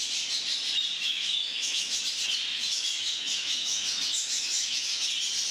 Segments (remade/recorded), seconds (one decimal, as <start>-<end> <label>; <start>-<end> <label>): 0.0-1.0 recorded; 1.0-2.0 remade; 2.0-2.5 recorded; 2.5-5.1 remade; 5.1-5.5 recorded

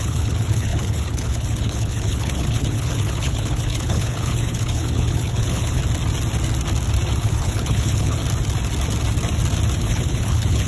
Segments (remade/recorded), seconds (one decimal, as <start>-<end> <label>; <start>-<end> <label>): 0.0-5.8 remade; 5.8-7.2 recorded; 7.2-8.2 remade; 8.2-9.8 recorded; 9.8-10.7 remade